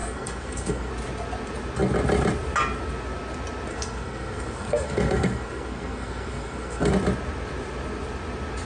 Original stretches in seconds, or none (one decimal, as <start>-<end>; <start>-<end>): 0.9-3.7; 6.9-8.6